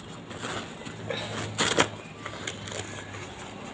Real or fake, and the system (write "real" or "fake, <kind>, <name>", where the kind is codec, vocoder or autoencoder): real